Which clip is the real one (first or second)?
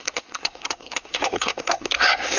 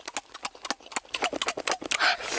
second